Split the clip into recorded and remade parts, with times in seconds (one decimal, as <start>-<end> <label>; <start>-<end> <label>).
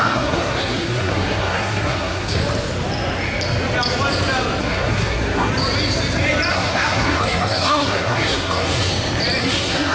0.0-2.4 remade; 2.4-4.6 recorded; 4.6-5.5 remade; 5.5-6.5 recorded; 6.5-8.9 remade; 8.9-9.4 recorded; 9.4-9.9 remade